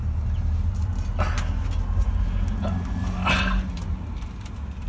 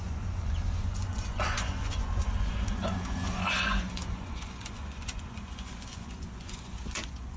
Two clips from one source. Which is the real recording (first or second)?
first